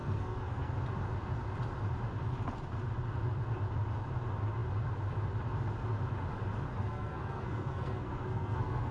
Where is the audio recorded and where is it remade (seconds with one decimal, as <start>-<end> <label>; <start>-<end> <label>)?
0.0-0.7 remade; 0.7-6.7 recorded; 6.7-8.9 remade